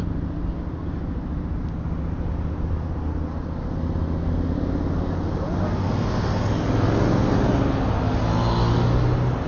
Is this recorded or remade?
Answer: recorded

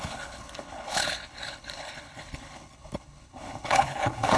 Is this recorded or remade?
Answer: remade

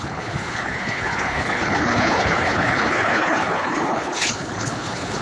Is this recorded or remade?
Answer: remade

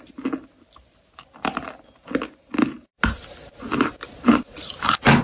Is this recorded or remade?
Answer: recorded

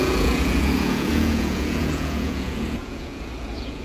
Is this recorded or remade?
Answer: remade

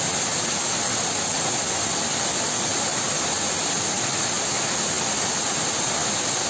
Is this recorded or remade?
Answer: recorded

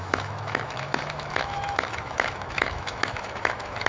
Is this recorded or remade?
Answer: remade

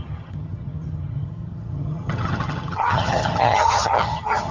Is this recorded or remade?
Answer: remade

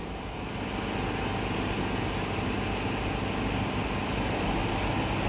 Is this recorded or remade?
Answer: recorded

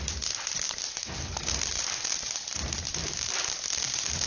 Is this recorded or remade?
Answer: remade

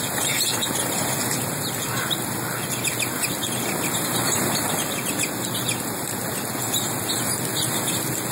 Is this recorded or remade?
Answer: recorded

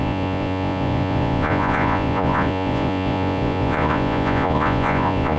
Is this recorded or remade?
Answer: remade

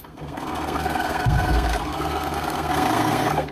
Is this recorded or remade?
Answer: remade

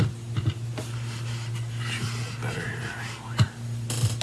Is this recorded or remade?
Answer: recorded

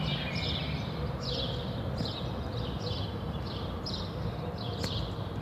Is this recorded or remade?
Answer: recorded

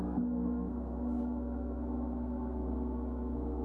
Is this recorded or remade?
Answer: remade